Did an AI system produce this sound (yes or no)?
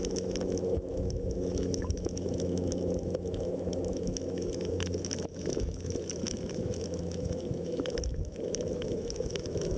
yes